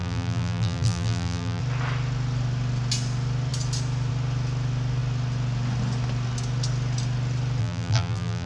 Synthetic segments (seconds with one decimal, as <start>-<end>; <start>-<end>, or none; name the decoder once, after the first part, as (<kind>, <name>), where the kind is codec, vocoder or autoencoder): 0.0-1.6 (vocoder, BigVGAN v2); 7.6-8.5